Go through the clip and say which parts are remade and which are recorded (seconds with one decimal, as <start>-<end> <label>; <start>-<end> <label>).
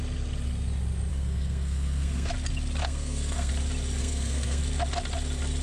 0.0-1.1 recorded; 1.1-2.3 remade; 2.3-2.8 recorded; 2.8-3.5 remade; 3.5-4.0 recorded; 4.0-4.6 remade; 4.6-5.6 recorded